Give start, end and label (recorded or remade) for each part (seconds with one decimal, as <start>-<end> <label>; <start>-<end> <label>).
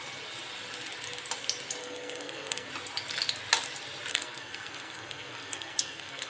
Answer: 0.0-1.8 recorded; 1.8-2.7 remade; 2.7-4.1 recorded; 4.1-6.3 remade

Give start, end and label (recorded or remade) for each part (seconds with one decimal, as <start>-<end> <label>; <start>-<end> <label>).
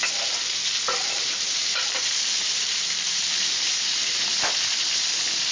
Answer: 0.0-1.0 recorded; 1.0-4.3 remade; 4.3-5.5 recorded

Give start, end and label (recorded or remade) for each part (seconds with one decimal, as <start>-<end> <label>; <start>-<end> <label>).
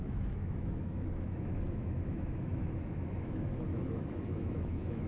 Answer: 0.0-5.1 remade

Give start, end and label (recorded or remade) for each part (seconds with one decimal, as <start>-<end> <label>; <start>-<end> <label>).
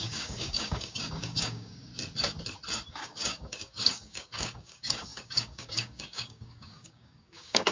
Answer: 0.0-1.9 remade; 1.9-2.9 recorded; 2.9-7.7 remade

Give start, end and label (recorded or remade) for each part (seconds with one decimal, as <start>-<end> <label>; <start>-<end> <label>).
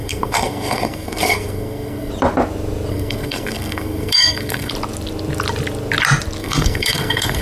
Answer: 0.0-2.1 remade; 2.1-2.9 recorded; 2.9-4.7 remade; 4.7-6.4 recorded; 6.4-7.4 remade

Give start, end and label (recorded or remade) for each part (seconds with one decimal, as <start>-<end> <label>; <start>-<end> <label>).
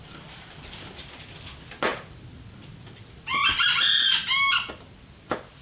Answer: 0.0-5.6 recorded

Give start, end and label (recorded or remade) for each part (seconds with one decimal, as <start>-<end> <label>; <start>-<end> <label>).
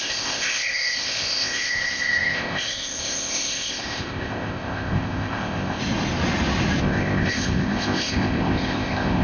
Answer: 0.0-5.8 remade; 5.8-6.8 recorded; 6.8-9.2 remade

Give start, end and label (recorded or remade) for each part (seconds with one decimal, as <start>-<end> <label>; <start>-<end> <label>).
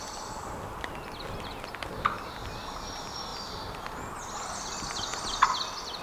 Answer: 0.0-3.3 recorded; 3.3-5.4 remade; 5.4-6.0 recorded